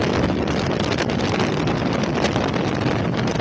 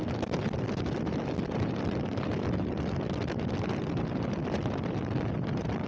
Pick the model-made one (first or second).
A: second